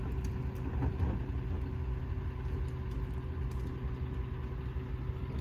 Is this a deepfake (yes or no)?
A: no